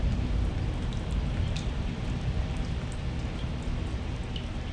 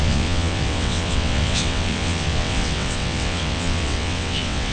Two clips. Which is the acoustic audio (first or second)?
first